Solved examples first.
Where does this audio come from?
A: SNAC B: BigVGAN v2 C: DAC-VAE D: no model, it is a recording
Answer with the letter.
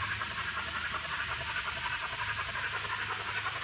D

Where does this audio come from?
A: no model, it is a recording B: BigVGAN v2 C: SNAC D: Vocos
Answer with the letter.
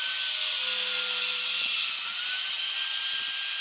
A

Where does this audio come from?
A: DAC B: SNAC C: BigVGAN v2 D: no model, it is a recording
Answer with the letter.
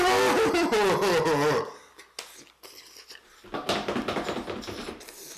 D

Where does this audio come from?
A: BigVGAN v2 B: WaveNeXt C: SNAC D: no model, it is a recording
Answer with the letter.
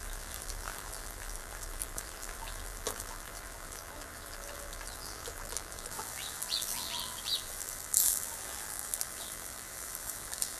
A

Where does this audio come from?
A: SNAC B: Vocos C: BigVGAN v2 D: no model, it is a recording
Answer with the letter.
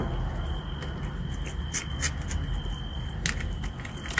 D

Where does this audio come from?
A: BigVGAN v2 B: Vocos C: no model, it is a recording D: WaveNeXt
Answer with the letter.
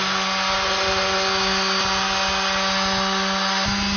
C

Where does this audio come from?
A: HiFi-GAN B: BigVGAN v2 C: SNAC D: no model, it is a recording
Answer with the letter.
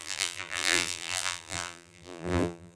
B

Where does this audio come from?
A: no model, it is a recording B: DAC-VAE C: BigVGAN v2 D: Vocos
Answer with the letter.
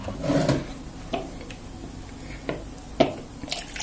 A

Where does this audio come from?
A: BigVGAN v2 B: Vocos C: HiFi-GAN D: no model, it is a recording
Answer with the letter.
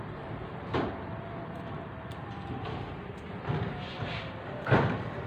A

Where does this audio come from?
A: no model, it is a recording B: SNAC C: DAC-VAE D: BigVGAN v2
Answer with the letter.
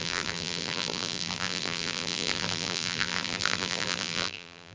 D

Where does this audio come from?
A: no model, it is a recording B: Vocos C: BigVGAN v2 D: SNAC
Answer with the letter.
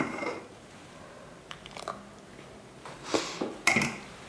C